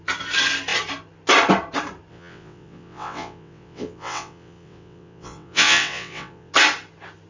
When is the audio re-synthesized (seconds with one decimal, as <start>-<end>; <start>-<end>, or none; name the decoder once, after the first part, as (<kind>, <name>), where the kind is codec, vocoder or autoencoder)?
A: 2.1-6.5 (vocoder, WaveNeXt)

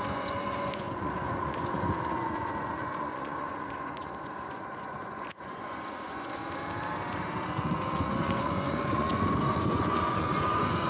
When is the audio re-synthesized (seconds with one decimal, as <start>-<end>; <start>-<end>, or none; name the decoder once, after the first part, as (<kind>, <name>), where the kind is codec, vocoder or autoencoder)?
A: 0.0-6.4 (vocoder, Vocos); 7.5-10.9

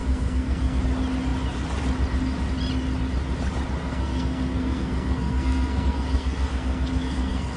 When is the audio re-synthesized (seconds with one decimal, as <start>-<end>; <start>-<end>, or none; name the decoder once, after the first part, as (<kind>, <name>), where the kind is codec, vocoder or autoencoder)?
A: 0.0-0.8 (codec, SNAC); 3.8-7.6

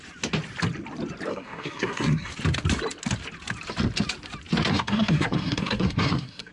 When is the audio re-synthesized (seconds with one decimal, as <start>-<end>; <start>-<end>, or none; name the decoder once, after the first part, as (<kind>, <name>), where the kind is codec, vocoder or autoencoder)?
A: 1.3-2.3 (codec, SNAC); 4.7-6.5

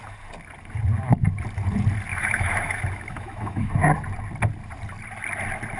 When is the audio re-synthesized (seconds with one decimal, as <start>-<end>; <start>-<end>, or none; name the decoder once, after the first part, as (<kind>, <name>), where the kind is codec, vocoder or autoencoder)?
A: 2.1-3.7 (autoencoder, DAC-VAE)

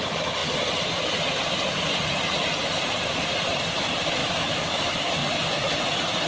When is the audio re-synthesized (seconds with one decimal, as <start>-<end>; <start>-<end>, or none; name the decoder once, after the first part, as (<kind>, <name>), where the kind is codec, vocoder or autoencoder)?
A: 4.2-4.8 (autoencoder, DAC-VAE)

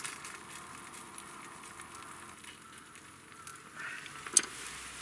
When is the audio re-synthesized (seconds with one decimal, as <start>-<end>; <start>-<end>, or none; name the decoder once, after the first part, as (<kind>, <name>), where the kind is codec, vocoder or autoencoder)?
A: none